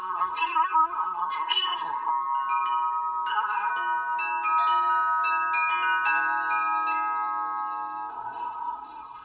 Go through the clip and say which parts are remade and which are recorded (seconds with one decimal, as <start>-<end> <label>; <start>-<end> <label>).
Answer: 0.0-2.1 remade; 2.1-3.3 recorded; 3.3-3.7 remade; 3.7-8.1 recorded; 8.1-9.2 remade